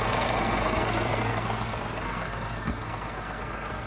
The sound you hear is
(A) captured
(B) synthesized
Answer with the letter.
B